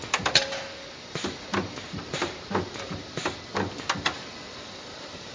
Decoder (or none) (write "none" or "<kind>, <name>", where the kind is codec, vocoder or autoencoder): none